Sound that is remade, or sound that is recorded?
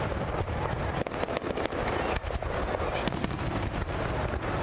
recorded